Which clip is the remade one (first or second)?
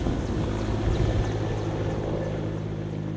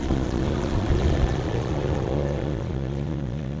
second